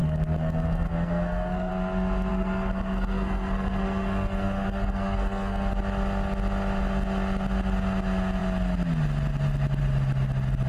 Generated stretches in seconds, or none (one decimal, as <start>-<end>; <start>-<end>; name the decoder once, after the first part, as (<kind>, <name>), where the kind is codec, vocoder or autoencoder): 0.0-1.7 (codec, SNAC); 2.3-5.7